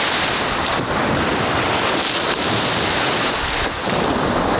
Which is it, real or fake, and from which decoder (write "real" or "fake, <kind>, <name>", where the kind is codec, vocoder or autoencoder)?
real